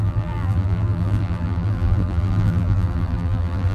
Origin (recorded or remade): remade